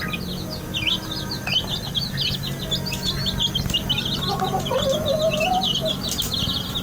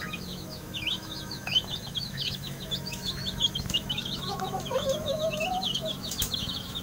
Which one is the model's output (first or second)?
second